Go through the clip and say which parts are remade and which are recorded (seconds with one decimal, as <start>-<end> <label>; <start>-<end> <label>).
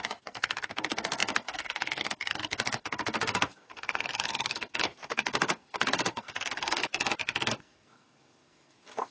0.0-6.8 remade; 6.8-7.5 recorded; 7.5-9.1 remade